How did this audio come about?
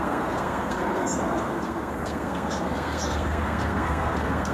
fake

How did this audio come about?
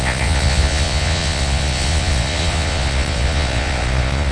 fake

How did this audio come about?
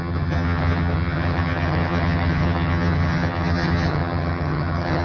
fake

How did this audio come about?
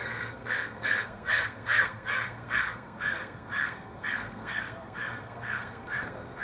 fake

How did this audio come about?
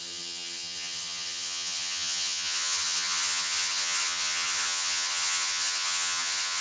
fake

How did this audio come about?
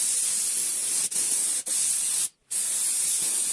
real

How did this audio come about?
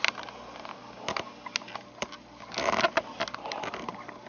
real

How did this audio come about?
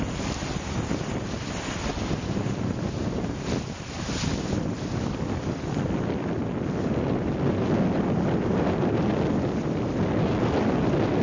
real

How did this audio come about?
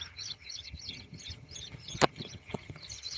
fake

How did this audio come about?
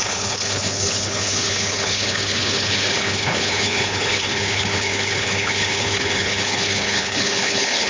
fake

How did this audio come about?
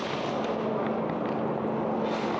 real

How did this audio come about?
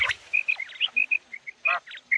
real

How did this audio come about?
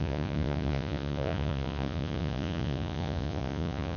fake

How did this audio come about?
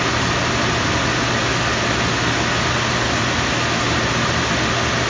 real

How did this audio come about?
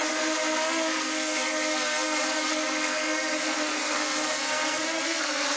fake